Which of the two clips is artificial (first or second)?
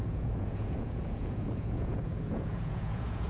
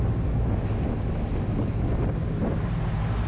first